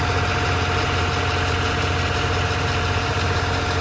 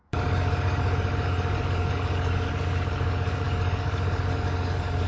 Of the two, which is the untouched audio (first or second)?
first